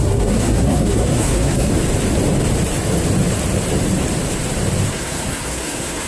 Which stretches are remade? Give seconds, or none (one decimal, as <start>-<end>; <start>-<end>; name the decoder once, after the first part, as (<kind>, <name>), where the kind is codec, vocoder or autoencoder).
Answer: 0.0-1.7 (codec, SNAC); 4.9-6.1